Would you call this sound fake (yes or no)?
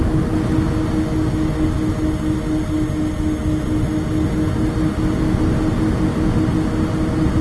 no